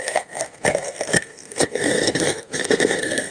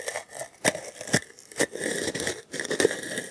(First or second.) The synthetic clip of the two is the first